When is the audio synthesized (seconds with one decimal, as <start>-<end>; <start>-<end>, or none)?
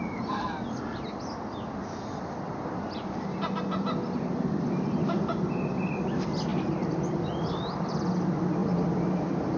0.9-5.3; 6.5-8.1; 8.6-9.2